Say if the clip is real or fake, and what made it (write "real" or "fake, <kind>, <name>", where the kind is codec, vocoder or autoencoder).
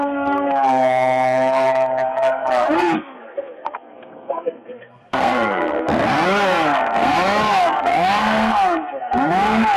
fake, codec, SNAC